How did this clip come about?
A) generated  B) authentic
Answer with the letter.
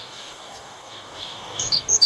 A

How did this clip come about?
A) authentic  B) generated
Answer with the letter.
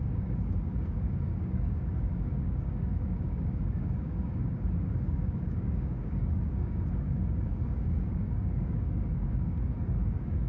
B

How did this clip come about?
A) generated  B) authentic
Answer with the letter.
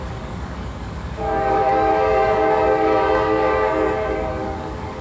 A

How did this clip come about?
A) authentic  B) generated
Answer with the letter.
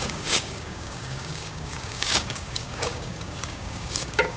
B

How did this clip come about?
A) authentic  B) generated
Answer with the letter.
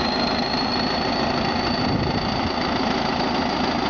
A